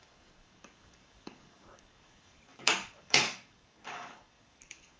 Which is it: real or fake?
fake